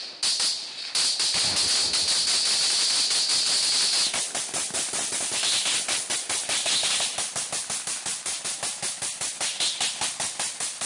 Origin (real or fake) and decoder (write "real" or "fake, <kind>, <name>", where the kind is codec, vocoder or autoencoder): real